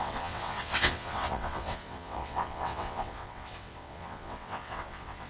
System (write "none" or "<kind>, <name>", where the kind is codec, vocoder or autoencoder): vocoder, WaveNeXt